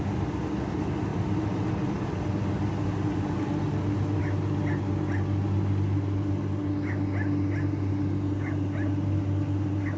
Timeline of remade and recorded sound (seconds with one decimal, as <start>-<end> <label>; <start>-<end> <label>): 0.0-10.0 recorded